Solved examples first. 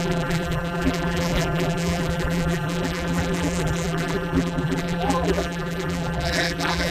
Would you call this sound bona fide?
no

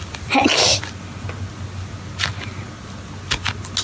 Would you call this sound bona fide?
yes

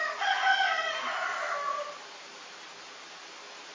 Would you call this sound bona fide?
yes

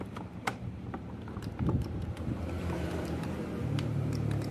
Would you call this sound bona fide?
no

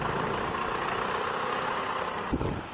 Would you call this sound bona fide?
yes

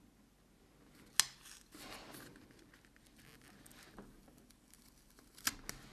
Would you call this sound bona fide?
yes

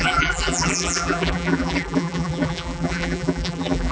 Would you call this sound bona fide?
no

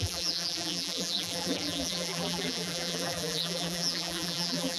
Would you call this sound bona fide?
no